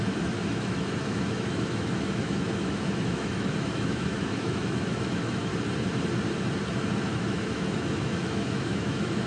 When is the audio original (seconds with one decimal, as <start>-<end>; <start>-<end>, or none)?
5.5-7.0